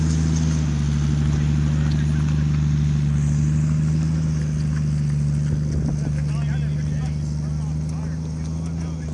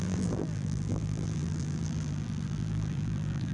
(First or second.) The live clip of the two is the first